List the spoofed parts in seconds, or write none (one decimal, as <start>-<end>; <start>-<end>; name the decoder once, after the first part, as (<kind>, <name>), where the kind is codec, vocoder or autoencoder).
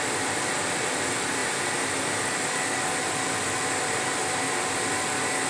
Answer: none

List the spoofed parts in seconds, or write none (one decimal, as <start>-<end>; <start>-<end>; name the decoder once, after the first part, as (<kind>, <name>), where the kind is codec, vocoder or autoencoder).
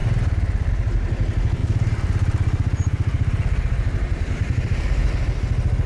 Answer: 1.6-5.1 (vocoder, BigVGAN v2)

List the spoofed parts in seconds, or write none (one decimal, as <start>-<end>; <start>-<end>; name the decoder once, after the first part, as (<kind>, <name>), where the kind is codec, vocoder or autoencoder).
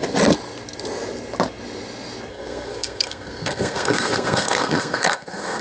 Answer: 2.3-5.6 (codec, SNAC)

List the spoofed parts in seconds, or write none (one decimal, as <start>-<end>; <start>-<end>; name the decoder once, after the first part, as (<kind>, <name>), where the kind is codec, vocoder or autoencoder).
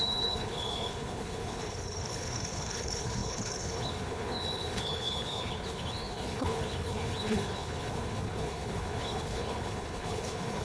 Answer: 0.0-10.6 (codec, HILCodec)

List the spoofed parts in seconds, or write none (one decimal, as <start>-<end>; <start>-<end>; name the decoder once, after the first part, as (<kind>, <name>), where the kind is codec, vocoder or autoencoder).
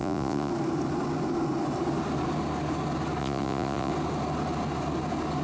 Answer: 0.0-0.5 (vocoder, Vocos); 3.2-3.9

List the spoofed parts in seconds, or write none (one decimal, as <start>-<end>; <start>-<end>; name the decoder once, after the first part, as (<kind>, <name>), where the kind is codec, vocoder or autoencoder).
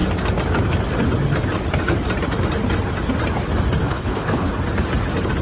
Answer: 3.8-4.5 (codec, HILCodec)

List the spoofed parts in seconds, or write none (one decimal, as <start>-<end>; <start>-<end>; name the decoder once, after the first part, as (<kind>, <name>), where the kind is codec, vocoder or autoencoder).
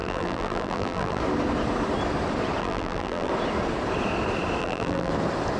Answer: 0.0-1.2 (vocoder, BigVGAN v2); 2.6-3.3; 4.6-5.1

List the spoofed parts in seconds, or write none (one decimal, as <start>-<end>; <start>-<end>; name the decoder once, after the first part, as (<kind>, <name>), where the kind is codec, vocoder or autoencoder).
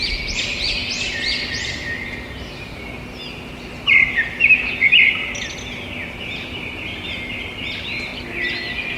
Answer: none